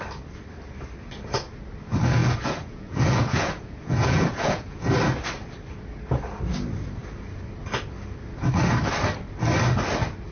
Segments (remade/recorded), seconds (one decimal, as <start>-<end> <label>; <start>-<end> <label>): 0.0-2.2 recorded; 2.2-4.9 remade; 4.9-10.3 recorded